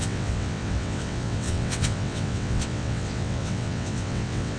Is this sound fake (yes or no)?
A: yes